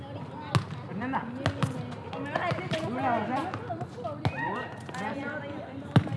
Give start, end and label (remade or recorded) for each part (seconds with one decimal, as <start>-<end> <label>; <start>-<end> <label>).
0.0-6.2 recorded